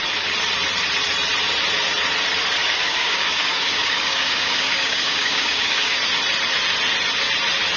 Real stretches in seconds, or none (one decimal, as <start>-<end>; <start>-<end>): 0.0-2.6; 6.0-7.8